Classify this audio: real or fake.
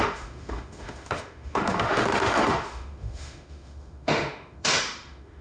fake